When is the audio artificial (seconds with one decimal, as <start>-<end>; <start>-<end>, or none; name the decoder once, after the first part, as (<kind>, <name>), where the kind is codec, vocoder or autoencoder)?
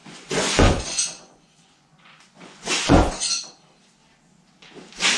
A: 0.0-3.1 (vocoder, Vocos)